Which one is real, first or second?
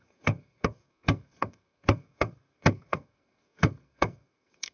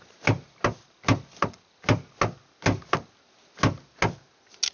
second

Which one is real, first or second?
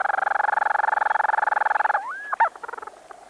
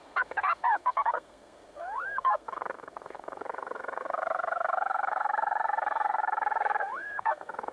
first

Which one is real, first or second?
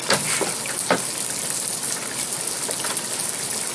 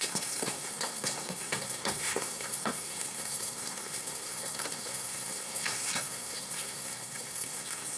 first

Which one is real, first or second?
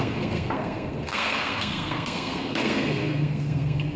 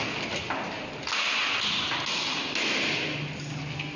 second